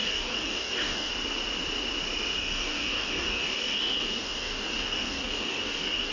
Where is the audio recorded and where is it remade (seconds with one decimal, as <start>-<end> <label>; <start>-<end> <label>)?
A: 0.0-1.1 remade; 1.1-2.3 recorded; 2.3-6.1 remade